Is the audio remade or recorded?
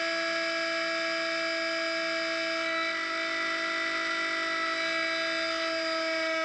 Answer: recorded